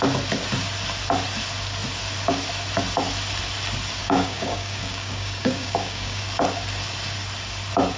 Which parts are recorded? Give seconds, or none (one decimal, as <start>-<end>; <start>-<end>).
0.0-4.0; 6.2-8.0